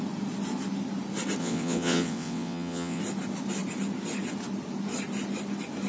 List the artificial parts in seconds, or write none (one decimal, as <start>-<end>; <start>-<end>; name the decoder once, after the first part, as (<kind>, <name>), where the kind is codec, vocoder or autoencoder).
1.4-3.0 (vocoder, WaveNeXt)